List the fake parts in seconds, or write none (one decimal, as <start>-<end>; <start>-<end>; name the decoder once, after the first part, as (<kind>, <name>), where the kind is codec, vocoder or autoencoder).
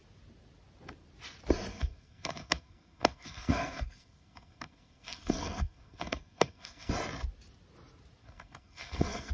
1.7-6.9 (codec, SNAC); 8.2-9.3